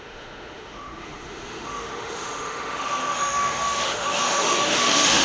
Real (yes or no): no